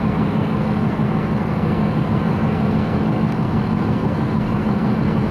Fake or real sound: fake